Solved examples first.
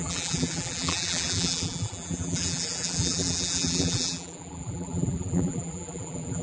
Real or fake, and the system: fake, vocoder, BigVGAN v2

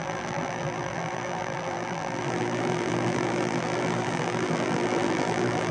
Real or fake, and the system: fake, vocoder, BigVGAN v2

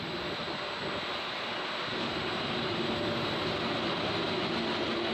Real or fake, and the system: real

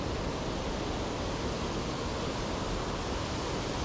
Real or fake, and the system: real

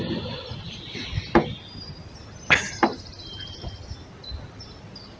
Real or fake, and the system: real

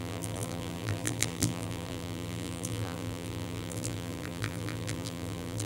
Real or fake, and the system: fake, vocoder, BigVGAN v2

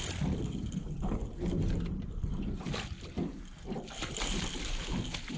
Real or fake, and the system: real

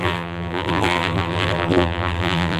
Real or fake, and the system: fake, vocoder, BigVGAN v2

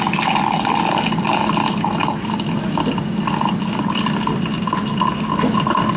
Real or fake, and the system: real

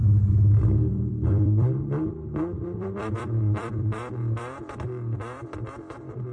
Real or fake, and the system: fake, vocoder, BigVGAN v2